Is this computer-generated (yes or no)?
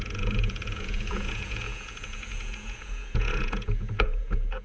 yes